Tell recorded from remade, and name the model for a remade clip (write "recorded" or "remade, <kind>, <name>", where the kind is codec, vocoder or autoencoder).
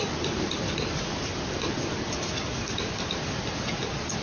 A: recorded